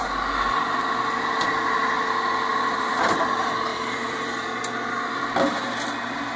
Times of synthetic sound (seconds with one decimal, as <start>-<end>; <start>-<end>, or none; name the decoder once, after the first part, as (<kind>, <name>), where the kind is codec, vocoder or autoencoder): 2.5-3.2 (vocoder, BigVGAN v2); 3.7-4.6

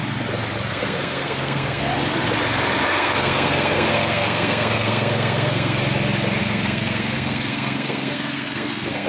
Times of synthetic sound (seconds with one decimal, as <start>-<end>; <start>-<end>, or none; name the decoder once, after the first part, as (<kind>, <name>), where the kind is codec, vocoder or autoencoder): 0.7-1.9 (codec, SNAC); 2.9-5.8; 6.4-9.1

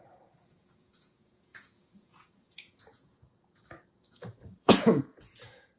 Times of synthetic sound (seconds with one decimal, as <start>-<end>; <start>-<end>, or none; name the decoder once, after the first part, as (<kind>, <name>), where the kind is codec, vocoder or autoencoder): 0.0-5.8 (vocoder, Vocos)

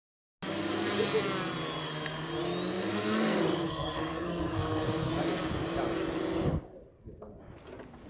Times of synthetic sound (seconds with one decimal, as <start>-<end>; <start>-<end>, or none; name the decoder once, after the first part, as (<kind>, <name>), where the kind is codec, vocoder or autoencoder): 2.9-5.1 (codec, SNAC)

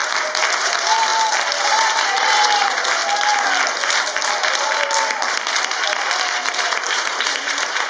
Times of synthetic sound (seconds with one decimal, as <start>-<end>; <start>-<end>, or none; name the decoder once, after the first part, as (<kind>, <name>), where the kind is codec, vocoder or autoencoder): 0.5-1.1 (vocoder, BigVGAN v2); 1.6-3.0; 6.2-7.9

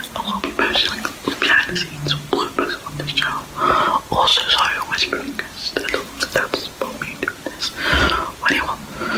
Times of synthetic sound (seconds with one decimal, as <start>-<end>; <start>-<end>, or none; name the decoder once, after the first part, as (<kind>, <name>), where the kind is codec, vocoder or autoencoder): 4.3-8.5 (vocoder, BigVGAN v2)